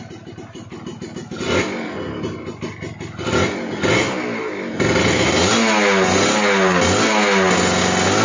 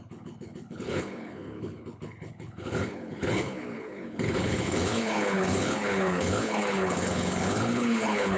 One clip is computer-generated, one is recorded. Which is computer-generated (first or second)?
second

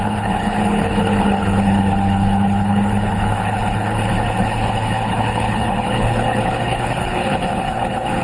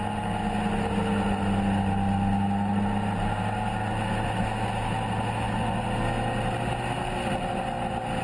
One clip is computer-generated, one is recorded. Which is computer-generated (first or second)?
first